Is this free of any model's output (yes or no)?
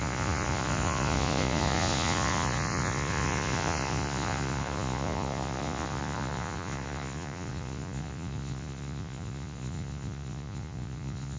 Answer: no